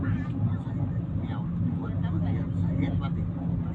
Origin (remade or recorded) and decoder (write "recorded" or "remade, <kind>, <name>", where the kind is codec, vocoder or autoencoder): recorded